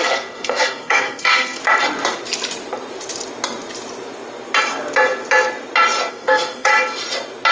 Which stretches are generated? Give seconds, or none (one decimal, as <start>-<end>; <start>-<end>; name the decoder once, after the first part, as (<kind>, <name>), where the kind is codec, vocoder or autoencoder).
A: 0.0-1.6 (codec, SNAC); 6.1-6.7